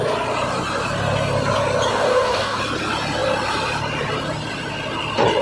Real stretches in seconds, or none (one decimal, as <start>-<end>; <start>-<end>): 0.0-1.9; 2.6-5.4